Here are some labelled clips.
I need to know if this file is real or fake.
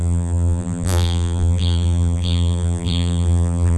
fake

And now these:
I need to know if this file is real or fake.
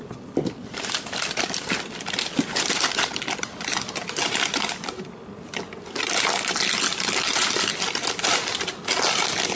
real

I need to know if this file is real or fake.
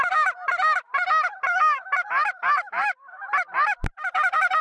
real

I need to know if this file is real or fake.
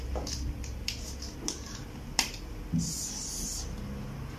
real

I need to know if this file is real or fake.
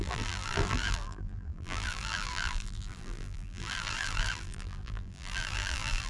fake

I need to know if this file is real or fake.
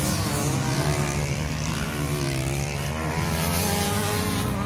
real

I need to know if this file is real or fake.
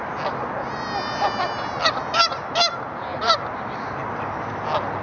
real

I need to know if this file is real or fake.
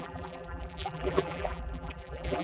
fake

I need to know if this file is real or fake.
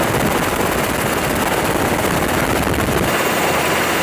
real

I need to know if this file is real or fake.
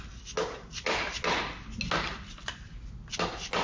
real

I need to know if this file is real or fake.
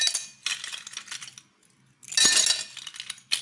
real